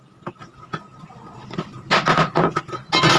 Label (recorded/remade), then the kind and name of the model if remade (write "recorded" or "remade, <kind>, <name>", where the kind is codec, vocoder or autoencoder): recorded